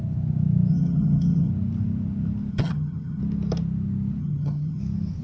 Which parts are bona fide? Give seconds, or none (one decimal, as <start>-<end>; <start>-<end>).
0.0-0.7; 1.5-2.5; 3.2-4.2; 4.8-5.2